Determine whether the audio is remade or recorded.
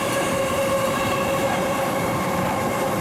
remade